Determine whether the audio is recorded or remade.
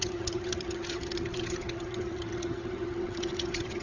remade